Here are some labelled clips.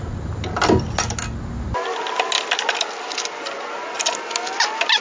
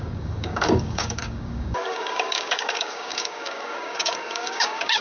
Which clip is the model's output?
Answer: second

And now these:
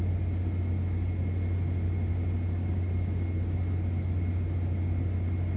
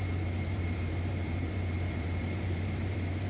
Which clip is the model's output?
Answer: second